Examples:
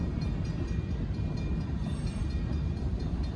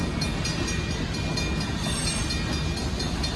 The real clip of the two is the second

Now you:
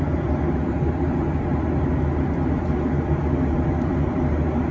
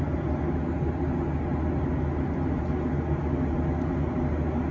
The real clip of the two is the second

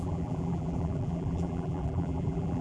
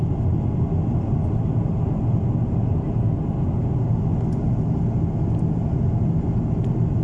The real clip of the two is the second